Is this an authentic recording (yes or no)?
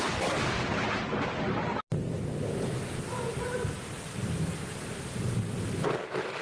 yes